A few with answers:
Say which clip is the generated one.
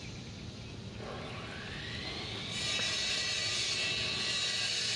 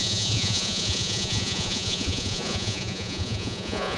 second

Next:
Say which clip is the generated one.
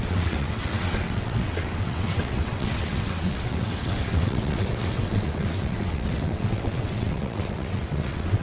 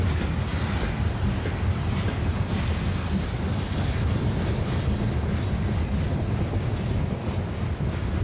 first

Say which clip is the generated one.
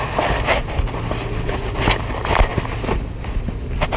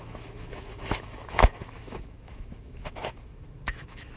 second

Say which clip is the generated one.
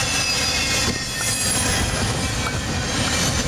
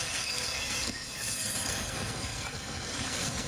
second